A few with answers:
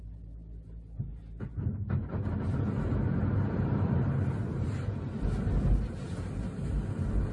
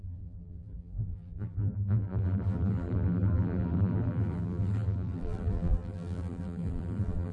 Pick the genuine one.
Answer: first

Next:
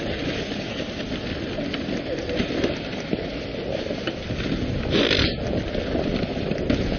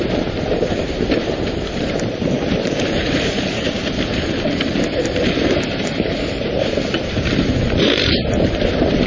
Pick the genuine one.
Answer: first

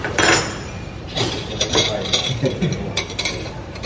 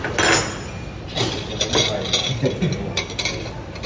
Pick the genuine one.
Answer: second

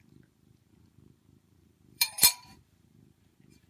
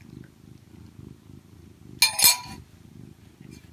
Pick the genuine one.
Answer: second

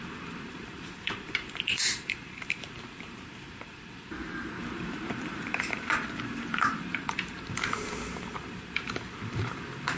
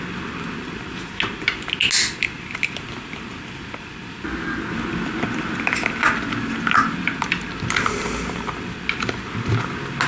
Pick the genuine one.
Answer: second